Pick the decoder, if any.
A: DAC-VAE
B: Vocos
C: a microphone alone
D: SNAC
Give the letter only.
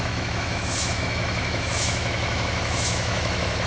A